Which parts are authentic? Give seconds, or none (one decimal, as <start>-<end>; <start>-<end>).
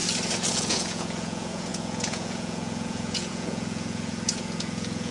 0.0-0.5